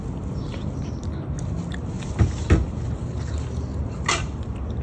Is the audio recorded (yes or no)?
yes